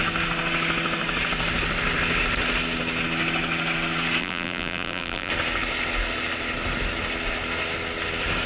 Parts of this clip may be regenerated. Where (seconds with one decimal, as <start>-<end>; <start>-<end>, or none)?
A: 4.2-5.3